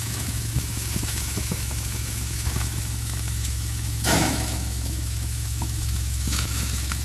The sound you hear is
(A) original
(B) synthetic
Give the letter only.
B